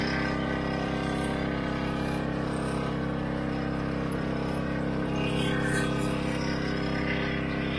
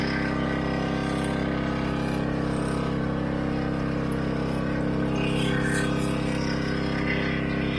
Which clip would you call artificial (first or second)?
first